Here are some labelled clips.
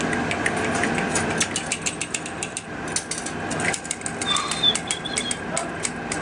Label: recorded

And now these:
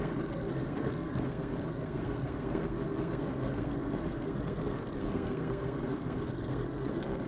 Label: remade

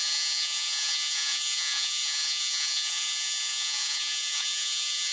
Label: remade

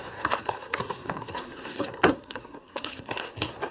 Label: remade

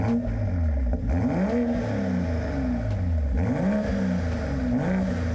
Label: recorded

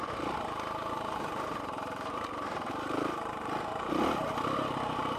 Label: remade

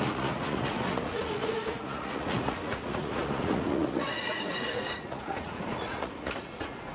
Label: remade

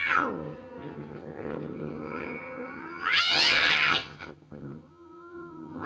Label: remade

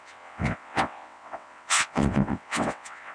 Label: remade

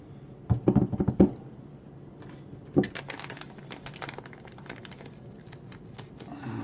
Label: recorded